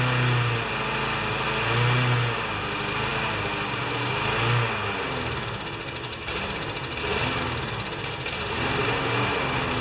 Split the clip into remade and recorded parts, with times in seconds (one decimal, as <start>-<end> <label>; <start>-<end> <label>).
0.0-9.8 recorded